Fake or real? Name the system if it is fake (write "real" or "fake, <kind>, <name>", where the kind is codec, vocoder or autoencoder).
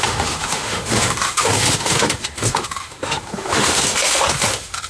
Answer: fake, autoencoder, DAC-VAE